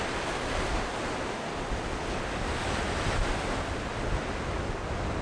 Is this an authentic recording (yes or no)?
yes